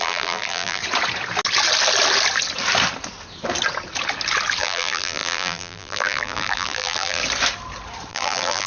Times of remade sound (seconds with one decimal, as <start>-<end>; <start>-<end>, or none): 0.0-0.8; 4.6-7.2; 8.1-8.7